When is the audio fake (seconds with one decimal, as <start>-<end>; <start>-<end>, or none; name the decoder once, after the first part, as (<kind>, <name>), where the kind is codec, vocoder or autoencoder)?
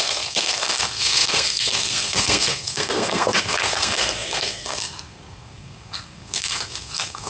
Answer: 0.0-7.3 (codec, SNAC)